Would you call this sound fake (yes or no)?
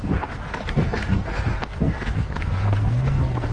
yes